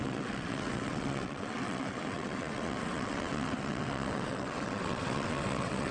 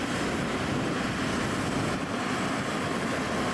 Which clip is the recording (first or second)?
second